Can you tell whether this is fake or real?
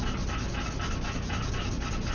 real